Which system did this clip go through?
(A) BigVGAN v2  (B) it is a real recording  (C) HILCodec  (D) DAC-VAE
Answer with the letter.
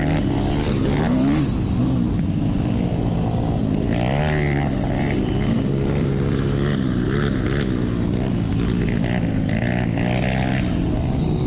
B